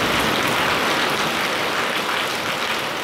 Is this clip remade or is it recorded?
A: remade